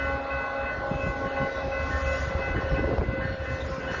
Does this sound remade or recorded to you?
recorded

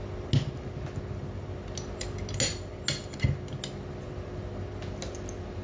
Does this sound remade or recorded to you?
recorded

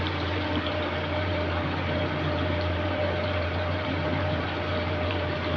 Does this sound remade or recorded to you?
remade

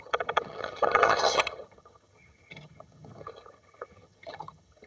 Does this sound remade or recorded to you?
remade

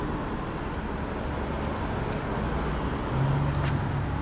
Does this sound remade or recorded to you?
recorded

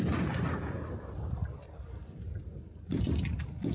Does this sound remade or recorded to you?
remade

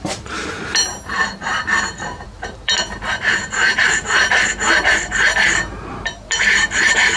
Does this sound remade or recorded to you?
remade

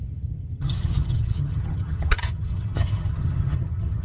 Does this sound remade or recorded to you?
remade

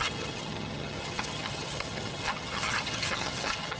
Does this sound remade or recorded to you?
remade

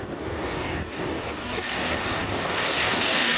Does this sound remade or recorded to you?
remade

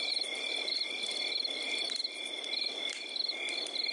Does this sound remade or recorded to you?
recorded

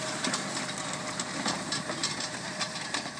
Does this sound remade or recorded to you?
remade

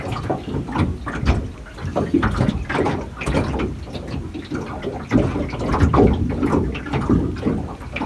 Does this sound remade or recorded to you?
recorded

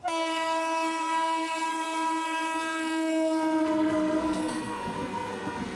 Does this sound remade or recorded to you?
remade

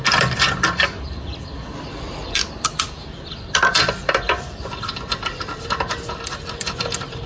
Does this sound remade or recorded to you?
remade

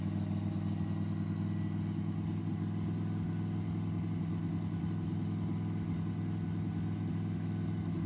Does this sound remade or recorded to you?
recorded